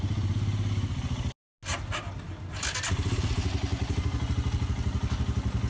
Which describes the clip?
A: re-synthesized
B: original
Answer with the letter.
B